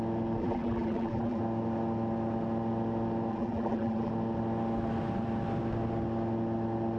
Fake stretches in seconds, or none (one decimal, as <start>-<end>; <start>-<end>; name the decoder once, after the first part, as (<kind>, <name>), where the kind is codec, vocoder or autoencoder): 0.4-1.4 (vocoder, BigVGAN v2); 3.3-4.1